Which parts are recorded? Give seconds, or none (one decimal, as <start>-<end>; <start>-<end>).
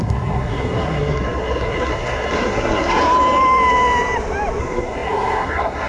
3.0-4.6